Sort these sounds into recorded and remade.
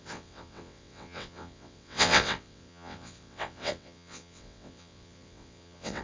remade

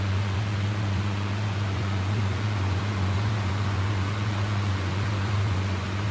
remade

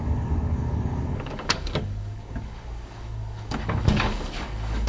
remade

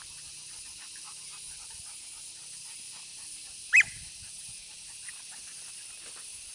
recorded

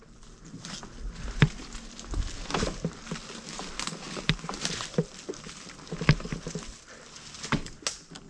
recorded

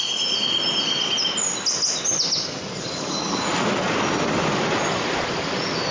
recorded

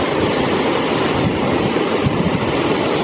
remade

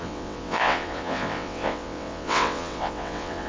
remade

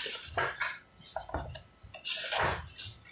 recorded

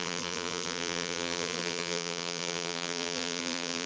remade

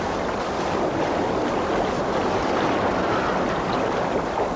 recorded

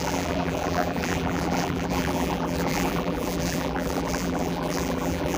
remade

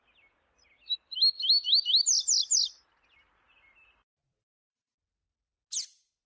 recorded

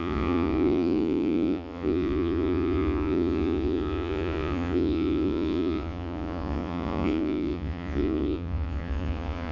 remade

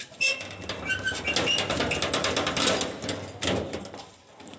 recorded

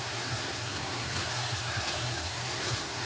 remade